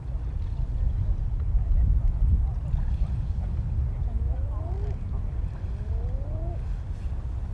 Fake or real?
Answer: real